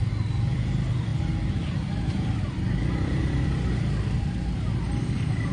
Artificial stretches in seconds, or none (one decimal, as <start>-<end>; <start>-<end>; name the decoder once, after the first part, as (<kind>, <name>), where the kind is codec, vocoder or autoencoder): none